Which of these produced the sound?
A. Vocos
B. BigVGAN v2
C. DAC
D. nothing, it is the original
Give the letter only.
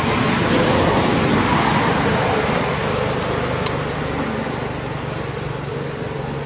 D